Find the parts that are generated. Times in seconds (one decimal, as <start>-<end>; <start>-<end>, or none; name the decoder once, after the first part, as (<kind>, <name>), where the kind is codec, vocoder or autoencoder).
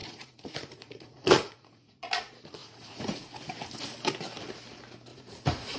0.0-2.1 (vocoder, Vocos); 2.6-3.3; 5.1-5.8